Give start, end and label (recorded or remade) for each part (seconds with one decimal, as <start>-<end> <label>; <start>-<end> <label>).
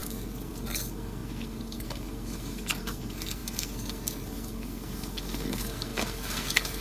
0.0-6.8 remade